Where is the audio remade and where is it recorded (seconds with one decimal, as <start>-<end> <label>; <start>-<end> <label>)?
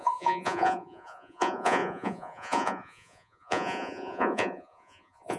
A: 0.0-5.4 remade